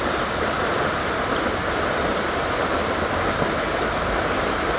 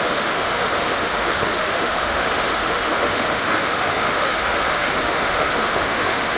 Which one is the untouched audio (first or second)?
first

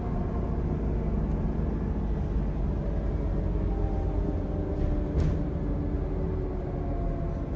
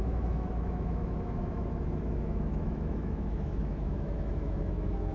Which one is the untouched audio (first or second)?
first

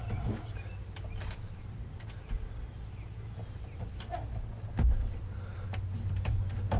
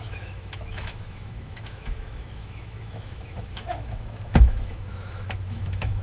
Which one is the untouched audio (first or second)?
first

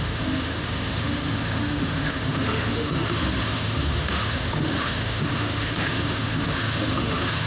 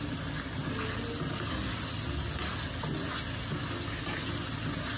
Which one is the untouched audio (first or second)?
second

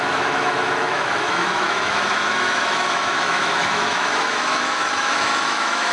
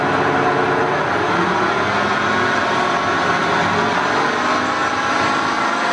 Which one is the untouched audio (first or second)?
second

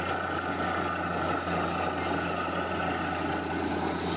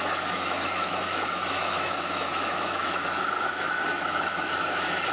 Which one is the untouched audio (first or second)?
first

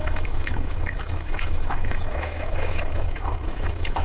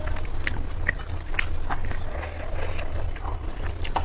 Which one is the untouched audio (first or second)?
second